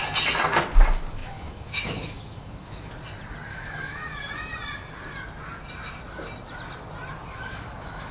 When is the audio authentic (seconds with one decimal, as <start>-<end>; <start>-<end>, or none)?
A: 0.0-1.2; 2.9-3.5; 4.3-7.3